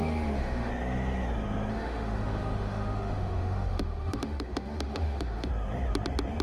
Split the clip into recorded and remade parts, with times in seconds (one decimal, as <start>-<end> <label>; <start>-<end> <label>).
0.0-0.7 remade; 0.7-1.7 recorded; 1.7-5.5 remade; 5.5-6.4 recorded